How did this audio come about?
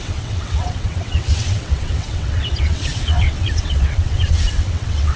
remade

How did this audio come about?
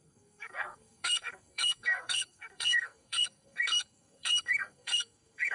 remade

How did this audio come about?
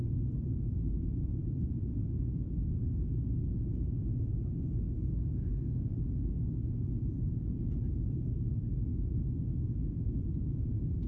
remade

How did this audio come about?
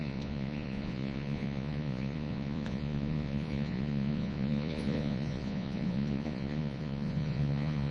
remade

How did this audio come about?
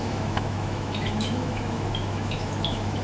remade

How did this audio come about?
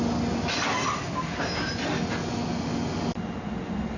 recorded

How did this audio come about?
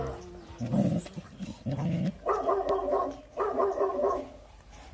recorded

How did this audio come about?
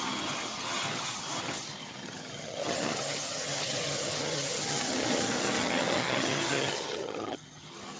remade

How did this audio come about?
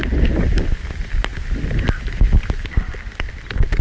recorded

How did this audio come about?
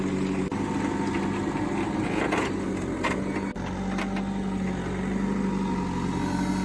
recorded